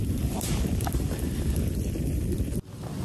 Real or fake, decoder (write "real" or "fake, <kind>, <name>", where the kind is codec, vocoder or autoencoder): fake, vocoder, BigVGAN v2